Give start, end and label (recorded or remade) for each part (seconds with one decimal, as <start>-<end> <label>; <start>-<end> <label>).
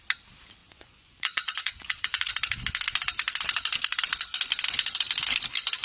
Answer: 0.0-0.6 recorded; 0.6-2.3 remade; 2.3-5.8 recorded